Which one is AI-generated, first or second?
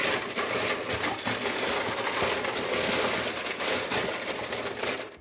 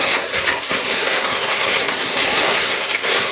second